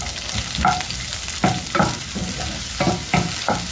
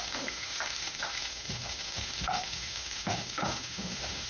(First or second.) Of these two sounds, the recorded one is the first